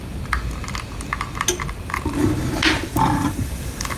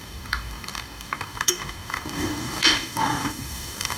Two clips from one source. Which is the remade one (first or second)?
second